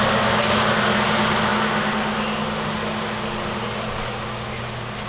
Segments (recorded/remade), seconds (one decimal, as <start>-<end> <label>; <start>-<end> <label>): 0.0-5.1 recorded